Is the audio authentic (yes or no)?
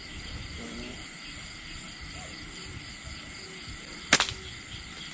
yes